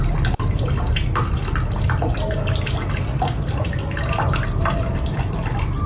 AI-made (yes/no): no